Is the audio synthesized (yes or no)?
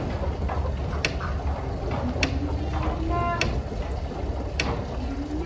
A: no